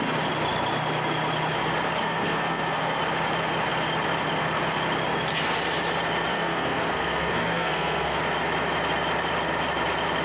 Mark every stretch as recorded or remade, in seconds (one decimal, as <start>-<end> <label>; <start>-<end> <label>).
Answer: 0.0-2.0 recorded; 2.0-3.0 remade; 3.0-6.3 recorded; 6.3-8.2 remade; 8.2-10.2 recorded